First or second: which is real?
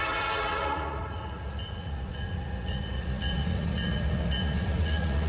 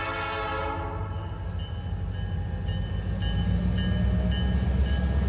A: second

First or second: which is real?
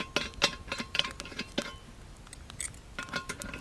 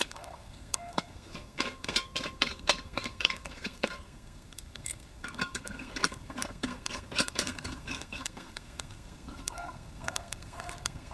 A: first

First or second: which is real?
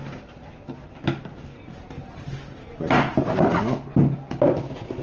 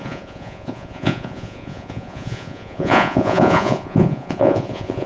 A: first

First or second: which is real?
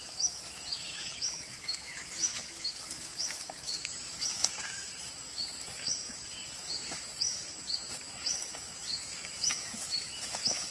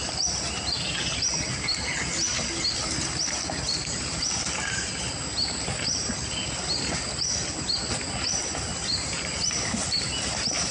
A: second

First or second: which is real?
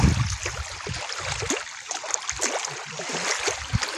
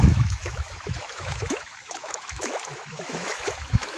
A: first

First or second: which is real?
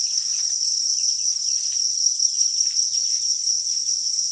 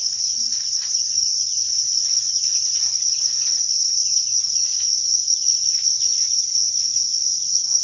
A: first